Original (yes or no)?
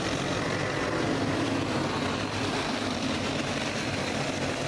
no